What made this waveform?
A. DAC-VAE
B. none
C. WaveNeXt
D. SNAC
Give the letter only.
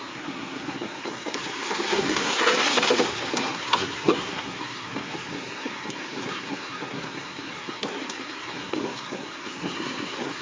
D